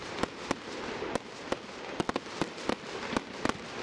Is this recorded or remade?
recorded